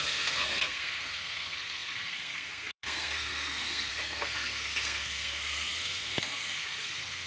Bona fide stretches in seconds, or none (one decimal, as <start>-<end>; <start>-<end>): none